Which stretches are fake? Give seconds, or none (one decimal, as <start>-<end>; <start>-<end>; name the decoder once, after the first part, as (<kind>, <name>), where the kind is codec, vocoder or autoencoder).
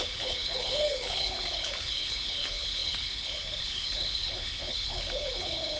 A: 0.0-5.8 (codec, HILCodec)